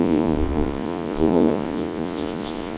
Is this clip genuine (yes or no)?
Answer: no